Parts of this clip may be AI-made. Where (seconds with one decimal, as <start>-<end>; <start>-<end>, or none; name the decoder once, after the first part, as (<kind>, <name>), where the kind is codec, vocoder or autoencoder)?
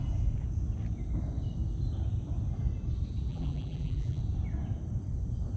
3.3-4.2 (vocoder, BigVGAN v2)